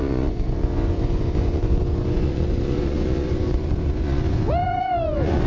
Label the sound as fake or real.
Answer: fake